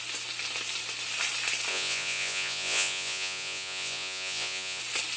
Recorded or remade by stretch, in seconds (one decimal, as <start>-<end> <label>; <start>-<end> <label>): 0.0-1.7 recorded; 1.7-4.8 remade; 4.8-5.2 recorded